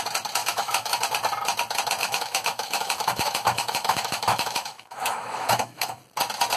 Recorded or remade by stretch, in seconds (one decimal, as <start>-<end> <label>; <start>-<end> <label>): 0.0-0.4 recorded; 0.4-1.0 remade; 1.0-2.0 recorded; 2.0-6.0 remade; 6.0-6.6 recorded